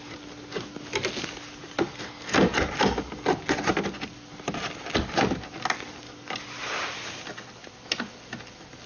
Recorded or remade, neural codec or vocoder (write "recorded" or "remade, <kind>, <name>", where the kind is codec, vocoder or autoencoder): recorded